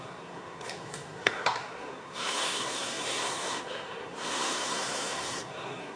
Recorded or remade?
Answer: remade